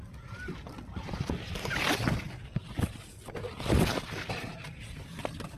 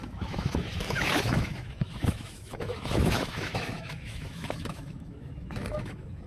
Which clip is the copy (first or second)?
second